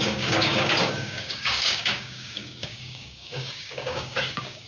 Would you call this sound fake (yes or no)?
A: yes